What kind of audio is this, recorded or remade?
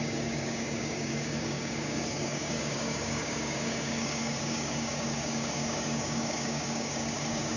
remade